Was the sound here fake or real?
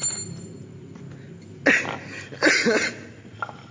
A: real